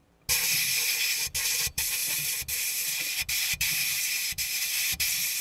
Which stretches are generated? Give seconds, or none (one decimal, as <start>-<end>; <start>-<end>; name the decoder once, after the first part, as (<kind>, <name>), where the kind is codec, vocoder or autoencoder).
1.6-2.0 (vocoder, BigVGAN v2); 3.4-5.4